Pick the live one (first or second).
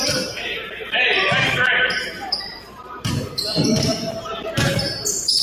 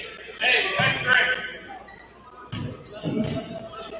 second